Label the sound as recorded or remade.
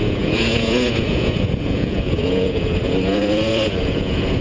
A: remade